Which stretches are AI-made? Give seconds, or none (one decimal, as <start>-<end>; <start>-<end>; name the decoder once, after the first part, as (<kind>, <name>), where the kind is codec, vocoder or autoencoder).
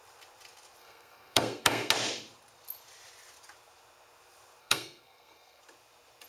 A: 0.8-1.9 (codec, SNAC); 4.6-5.6